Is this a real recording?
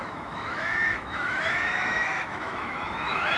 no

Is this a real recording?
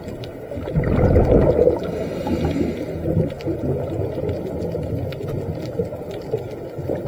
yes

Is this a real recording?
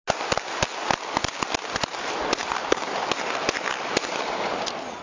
yes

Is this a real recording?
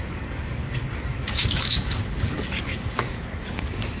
no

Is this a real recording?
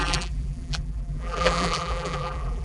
no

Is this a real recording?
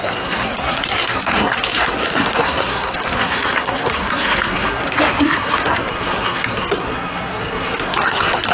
no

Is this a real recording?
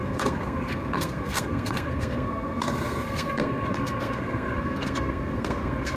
no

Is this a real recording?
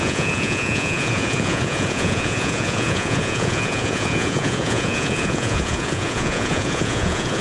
no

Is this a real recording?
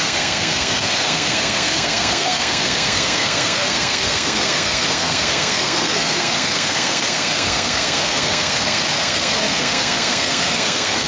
no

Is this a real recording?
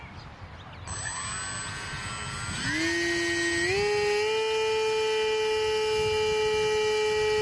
yes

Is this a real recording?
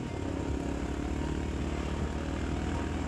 yes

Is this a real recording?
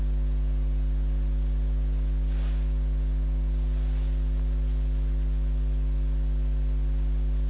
yes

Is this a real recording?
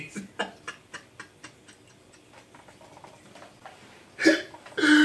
yes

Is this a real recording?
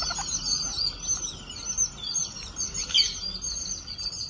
yes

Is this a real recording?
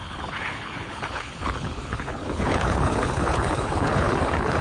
no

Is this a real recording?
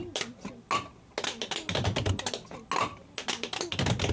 yes